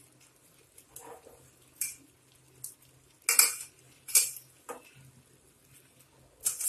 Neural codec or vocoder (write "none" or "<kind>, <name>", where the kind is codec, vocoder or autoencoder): none